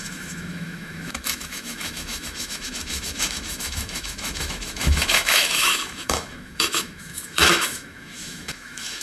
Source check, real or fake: fake